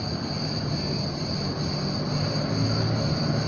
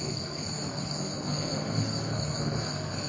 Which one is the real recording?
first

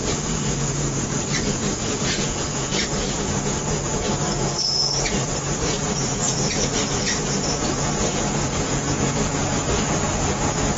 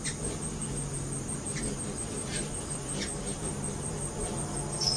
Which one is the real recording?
second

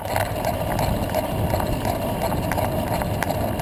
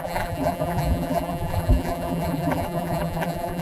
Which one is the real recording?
first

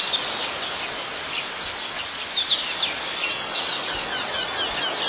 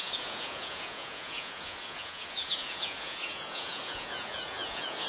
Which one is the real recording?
first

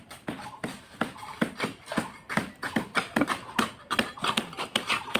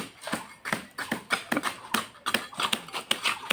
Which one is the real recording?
second